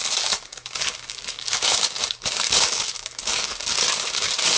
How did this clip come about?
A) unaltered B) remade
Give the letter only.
B